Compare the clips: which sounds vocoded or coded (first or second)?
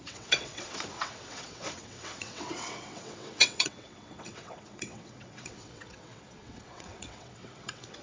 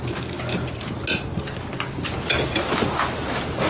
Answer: first